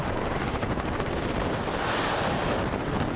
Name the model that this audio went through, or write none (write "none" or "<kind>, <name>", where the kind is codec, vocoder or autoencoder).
none